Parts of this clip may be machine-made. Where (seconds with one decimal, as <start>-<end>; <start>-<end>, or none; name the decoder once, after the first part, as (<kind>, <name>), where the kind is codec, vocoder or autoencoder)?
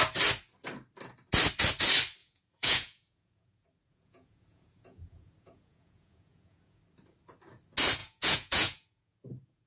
2.2-6.8 (vocoder, Vocos); 8.0-9.7